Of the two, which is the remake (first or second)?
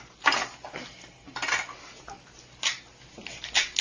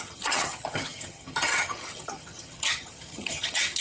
second